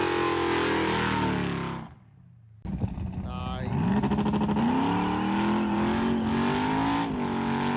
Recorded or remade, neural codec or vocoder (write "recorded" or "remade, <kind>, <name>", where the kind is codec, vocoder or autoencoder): recorded